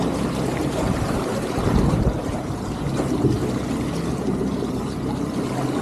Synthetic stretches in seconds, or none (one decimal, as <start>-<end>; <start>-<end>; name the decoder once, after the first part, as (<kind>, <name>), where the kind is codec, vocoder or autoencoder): 0.5-3.4 (vocoder, BigVGAN v2)